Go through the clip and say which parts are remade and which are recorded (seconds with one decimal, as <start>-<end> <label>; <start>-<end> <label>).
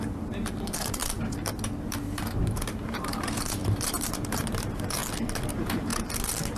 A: 0.0-1.0 remade; 1.0-1.8 recorded; 1.8-5.0 remade; 5.0-5.5 recorded; 5.5-5.9 remade; 5.9-6.6 recorded